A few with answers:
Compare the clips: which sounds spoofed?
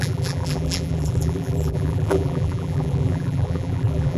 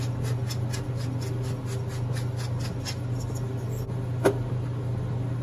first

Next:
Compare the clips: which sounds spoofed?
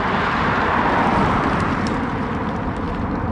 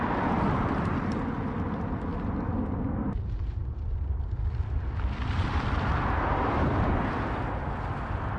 first